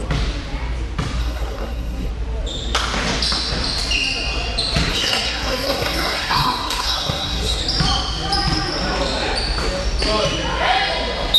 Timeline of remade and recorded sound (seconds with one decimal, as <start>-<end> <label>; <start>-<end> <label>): 0.0-1.2 recorded; 1.2-2.1 remade; 2.1-4.9 recorded; 4.9-7.6 remade; 7.6-11.4 recorded